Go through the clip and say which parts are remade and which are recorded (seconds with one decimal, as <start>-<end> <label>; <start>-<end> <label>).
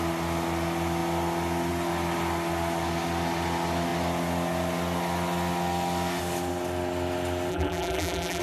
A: 0.0-7.5 recorded; 7.5-8.4 remade